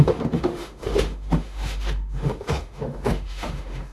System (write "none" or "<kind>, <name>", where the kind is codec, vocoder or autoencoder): autoencoder, DAC-VAE